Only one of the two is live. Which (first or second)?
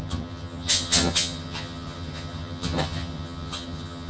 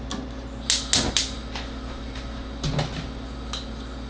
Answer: second